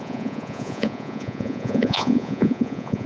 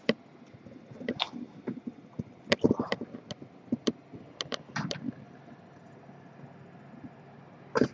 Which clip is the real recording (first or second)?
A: second